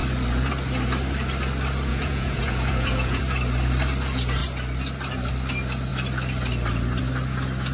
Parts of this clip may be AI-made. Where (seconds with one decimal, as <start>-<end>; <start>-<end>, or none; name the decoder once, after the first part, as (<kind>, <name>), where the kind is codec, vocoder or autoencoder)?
1.9-3.2 (vocoder, Vocos)